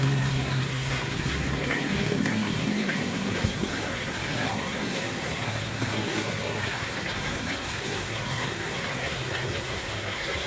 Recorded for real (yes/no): no